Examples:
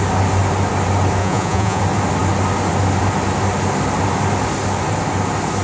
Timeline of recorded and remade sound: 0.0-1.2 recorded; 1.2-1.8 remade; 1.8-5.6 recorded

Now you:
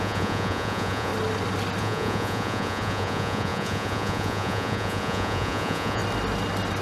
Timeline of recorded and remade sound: 0.0-1.1 remade; 1.1-1.8 recorded; 1.8-6.0 remade; 6.0-6.8 recorded

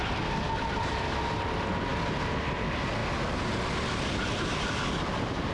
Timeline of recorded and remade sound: 0.0-5.5 recorded

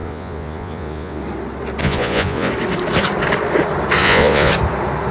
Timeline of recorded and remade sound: 0.0-1.2 remade; 1.2-1.8 recorded; 1.8-2.5 remade; 2.5-4.0 recorded; 4.0-4.5 remade; 4.5-5.1 recorded

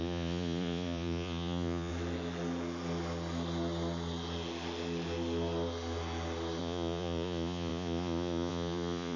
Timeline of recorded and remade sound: 0.0-1.9 remade; 1.9-6.6 recorded; 6.6-9.2 remade

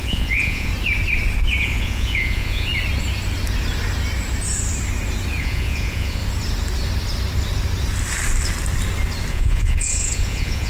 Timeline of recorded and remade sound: 0.0-0.7 remade; 0.7-1.6 recorded; 1.6-2.7 remade; 2.7-5.4 recorded; 5.4-6.2 remade; 6.2-9.3 recorded; 9.3-10.7 remade